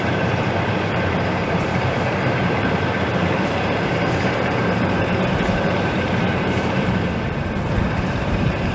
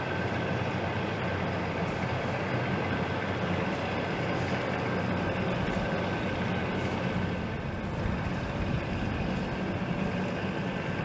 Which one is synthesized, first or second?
first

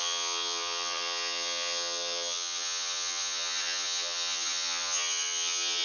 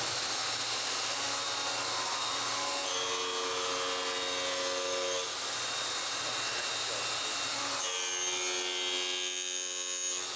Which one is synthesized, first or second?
first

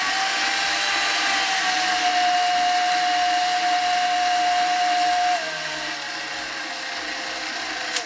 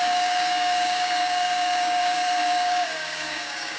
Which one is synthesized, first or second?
second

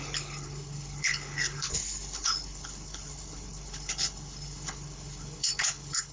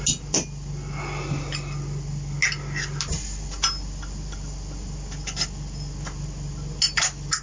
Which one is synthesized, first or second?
first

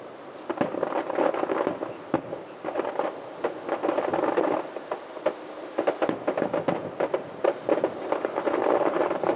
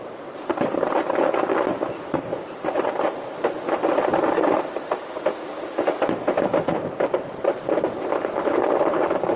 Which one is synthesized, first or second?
second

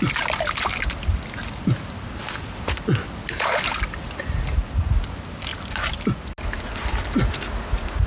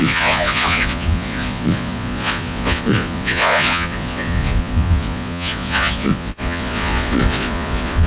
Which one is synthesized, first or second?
second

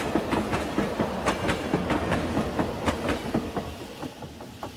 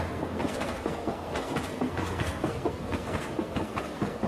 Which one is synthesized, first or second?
second